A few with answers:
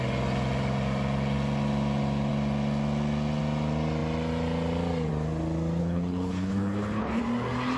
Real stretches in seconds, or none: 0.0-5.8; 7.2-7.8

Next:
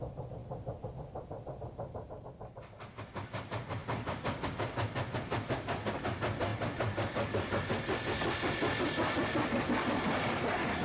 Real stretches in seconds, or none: 0.0-10.8

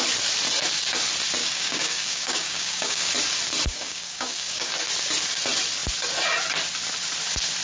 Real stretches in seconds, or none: 0.0-1.4; 3.1-3.7; 4.7-7.6